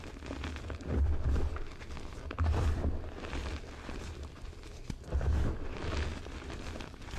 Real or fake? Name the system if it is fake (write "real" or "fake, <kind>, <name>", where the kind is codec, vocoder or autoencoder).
real